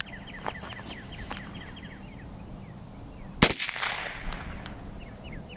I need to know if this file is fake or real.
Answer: real